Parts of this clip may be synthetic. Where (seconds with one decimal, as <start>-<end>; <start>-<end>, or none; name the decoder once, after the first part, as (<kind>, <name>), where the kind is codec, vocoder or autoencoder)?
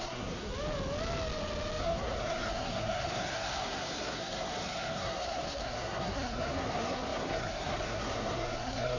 0.0-0.5 (codec, SNAC); 1.8-9.0